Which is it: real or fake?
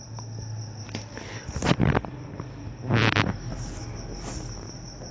real